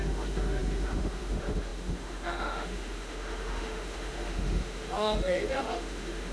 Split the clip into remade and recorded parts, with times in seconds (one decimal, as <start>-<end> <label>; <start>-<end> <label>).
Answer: 0.0-6.3 remade